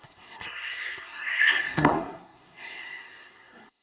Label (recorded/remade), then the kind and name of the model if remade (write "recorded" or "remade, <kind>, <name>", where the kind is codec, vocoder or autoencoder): remade, codec, SNAC